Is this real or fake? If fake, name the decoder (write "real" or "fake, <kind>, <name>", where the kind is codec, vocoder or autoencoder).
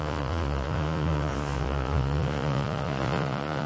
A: fake, vocoder, Vocos